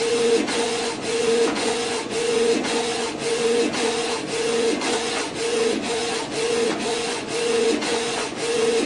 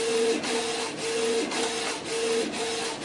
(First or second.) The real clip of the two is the second